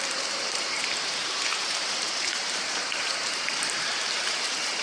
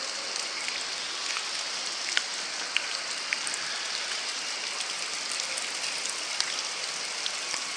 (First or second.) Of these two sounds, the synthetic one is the first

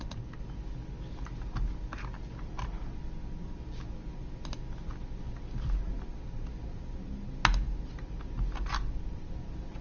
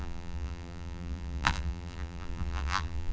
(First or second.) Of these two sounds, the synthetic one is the second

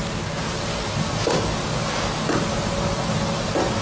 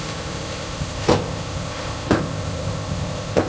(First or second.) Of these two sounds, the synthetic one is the second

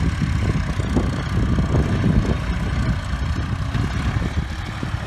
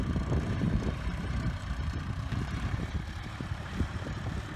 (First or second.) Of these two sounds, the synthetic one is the second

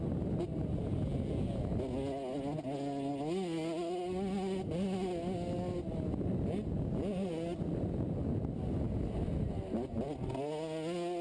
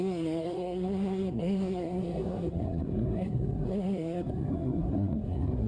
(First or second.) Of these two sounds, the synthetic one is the second